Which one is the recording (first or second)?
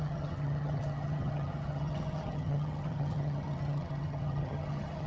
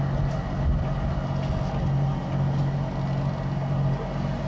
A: second